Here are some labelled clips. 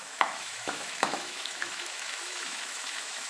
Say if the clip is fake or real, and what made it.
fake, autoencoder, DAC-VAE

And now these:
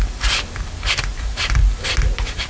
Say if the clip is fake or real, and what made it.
real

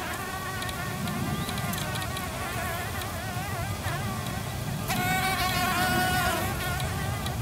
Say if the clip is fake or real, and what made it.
real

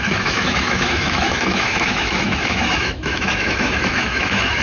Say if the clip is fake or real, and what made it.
fake, autoencoder, DAC-VAE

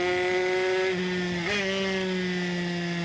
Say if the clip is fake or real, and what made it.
real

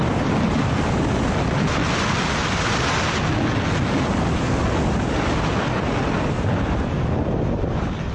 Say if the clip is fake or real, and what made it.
real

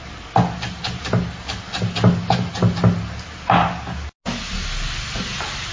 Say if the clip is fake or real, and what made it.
real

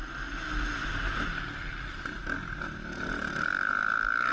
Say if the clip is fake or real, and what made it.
real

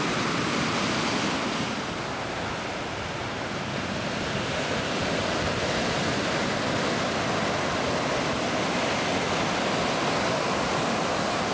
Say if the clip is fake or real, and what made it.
real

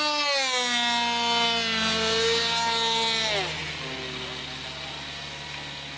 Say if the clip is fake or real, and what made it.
real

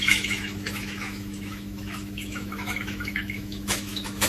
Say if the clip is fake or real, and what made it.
fake, autoencoder, DAC-VAE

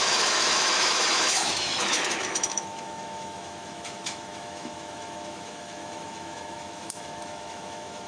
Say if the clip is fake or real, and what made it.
fake, autoencoder, DAC-VAE